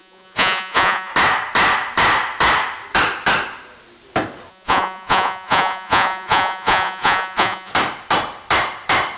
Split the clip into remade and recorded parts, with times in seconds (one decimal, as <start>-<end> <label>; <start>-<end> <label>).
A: 0.0-1.1 remade; 1.1-4.5 recorded; 4.5-7.7 remade; 7.7-9.2 recorded